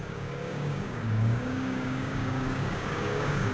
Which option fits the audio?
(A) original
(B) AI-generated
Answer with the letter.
B